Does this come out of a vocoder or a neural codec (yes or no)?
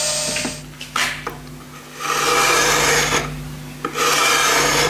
no